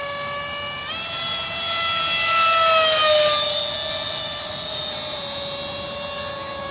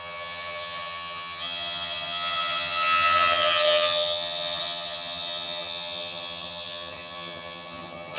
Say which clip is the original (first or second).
first